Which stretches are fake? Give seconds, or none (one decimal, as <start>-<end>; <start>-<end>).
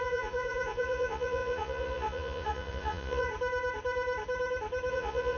0.0-3.3; 4.9-5.4